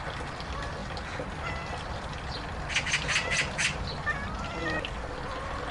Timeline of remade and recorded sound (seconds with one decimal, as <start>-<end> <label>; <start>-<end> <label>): 0.0-5.7 recorded